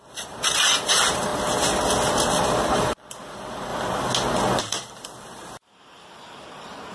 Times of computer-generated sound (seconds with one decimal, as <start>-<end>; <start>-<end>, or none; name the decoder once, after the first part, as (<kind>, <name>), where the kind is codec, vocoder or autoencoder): 0.0-1.3 (vocoder, BigVGAN v2); 2.1-3.7; 4.6-6.9